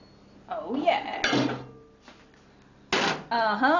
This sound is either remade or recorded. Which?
recorded